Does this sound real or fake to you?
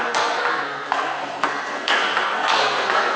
fake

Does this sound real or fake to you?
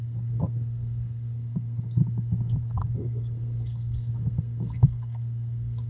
fake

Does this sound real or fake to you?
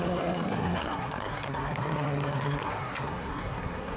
fake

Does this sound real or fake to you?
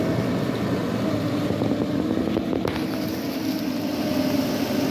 real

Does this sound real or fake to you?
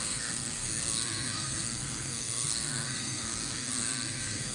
fake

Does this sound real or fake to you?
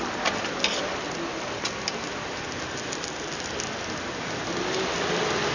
real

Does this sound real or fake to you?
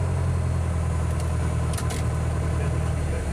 real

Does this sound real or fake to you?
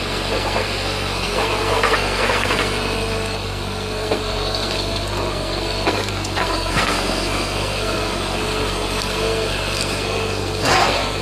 fake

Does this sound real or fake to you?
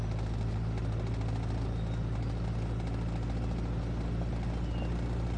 real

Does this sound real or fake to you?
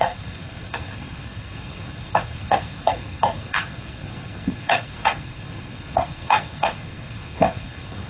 fake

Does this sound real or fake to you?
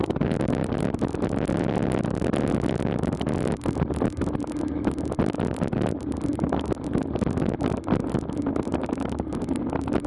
real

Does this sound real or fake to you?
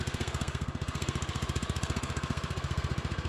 fake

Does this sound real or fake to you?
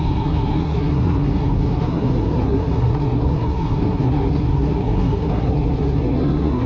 fake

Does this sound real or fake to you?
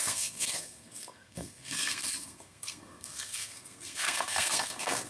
fake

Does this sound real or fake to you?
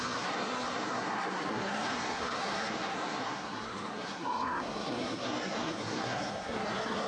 fake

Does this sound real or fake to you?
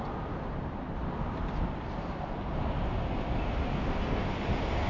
real